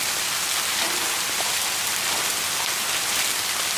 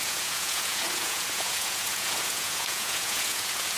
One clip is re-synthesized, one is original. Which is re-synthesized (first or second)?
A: second